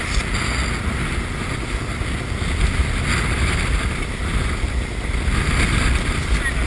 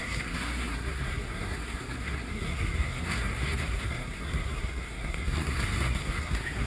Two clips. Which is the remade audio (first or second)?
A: second